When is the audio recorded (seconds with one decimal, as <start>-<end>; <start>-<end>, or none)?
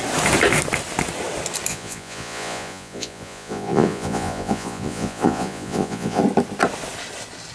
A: 0.0-1.7; 6.2-7.5